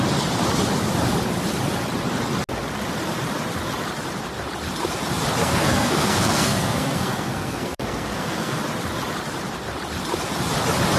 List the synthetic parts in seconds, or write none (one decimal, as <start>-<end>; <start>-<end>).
5.4-8.6